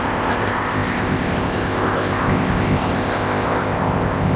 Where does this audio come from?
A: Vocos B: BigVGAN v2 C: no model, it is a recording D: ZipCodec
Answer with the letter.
D